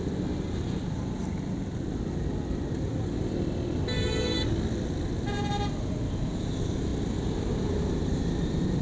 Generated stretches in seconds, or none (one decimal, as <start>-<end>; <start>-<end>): none